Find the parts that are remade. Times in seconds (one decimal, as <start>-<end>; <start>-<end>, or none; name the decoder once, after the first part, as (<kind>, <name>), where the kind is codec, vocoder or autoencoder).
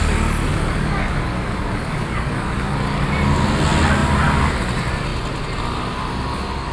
0.5-3.0 (codec, DAC)